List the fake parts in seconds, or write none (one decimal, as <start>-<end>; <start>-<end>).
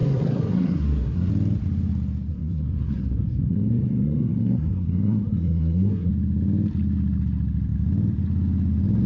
0.0-1.3; 2.3-6.1